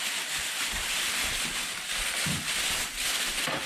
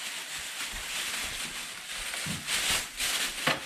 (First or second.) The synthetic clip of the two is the first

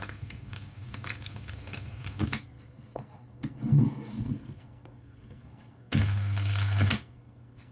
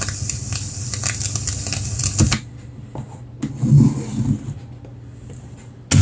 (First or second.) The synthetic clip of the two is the first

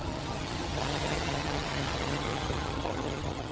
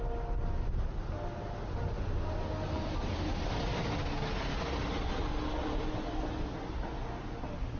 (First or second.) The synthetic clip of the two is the first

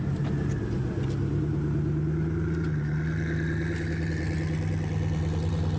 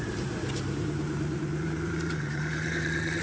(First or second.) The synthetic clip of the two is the second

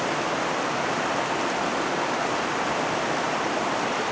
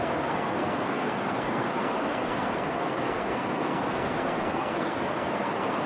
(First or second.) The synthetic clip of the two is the second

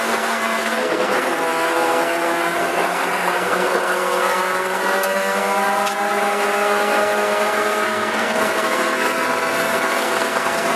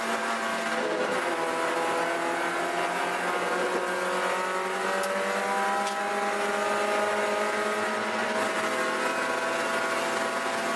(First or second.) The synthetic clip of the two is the first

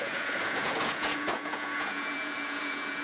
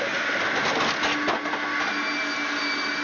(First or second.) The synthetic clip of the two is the first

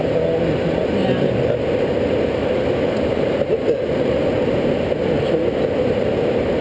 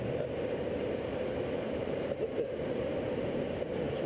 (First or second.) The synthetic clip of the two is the second